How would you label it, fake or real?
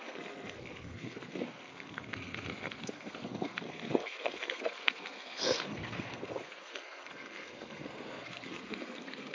fake